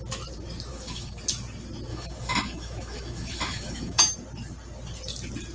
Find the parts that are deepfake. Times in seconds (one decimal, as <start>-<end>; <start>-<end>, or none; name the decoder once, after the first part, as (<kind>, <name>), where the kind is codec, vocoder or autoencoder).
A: 0.7-1.2 (autoencoder, DAC-VAE); 1.9-4.0